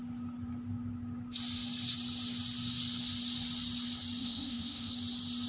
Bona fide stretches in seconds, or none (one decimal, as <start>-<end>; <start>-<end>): 0.0-4.2; 4.9-5.5